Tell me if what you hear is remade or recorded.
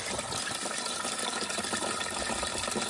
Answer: recorded